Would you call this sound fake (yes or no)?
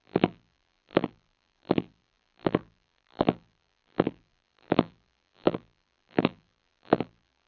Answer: yes